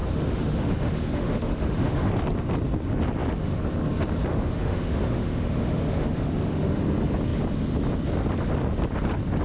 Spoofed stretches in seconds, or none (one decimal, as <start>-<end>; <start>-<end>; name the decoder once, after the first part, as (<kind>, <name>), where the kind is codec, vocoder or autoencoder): 0.0-2.1 (autoencoder, DAC-VAE); 4.3-6.8